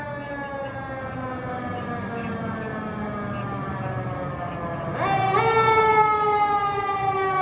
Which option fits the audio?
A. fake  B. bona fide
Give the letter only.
B